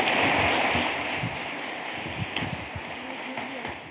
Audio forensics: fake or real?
real